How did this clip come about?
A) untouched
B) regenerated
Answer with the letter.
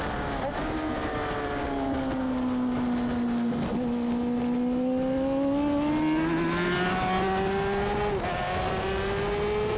A